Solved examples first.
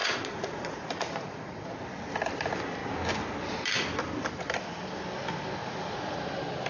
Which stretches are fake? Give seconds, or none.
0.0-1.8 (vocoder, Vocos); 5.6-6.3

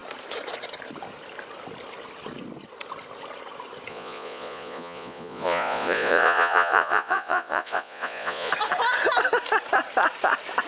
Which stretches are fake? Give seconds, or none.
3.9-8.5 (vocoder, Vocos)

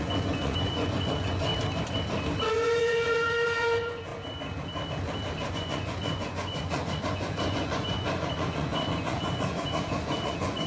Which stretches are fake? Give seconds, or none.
0.0-1.5 (vocoder, Vocos); 2.5-4.1; 5.5-10.7